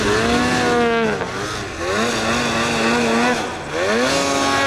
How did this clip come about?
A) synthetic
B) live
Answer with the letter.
B